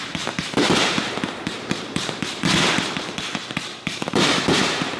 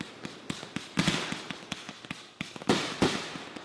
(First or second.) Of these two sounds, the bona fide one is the second